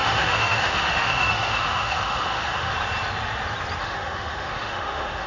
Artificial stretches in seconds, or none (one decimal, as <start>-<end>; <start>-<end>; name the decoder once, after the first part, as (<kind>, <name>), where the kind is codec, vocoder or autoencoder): 0.0-2.7 (autoencoder, DAC-VAE); 3.8-5.3